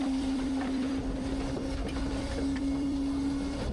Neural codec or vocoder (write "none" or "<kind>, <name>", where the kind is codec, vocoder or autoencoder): vocoder, BigVGAN v2